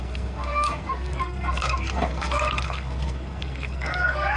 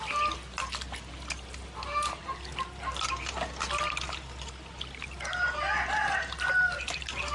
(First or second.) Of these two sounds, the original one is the second